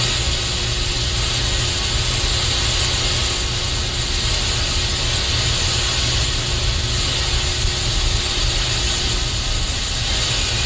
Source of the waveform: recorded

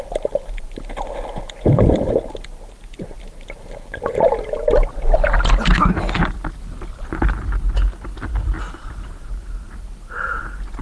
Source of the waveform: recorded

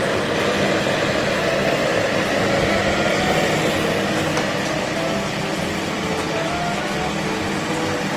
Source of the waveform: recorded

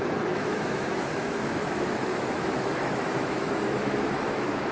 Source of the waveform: remade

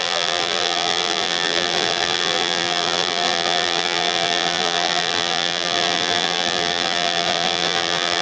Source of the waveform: remade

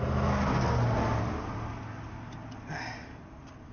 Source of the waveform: recorded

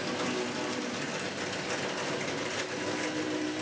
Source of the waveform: recorded